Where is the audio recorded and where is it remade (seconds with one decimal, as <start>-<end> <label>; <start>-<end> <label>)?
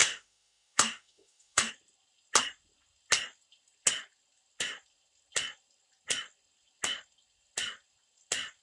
0.0-1.7 remade; 1.7-8.6 recorded